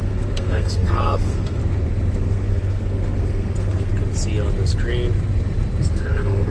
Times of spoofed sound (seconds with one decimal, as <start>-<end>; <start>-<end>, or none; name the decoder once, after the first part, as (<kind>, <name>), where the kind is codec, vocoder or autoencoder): 0.0-1.6 (codec, SNAC); 2.2-3.9; 5.8-6.5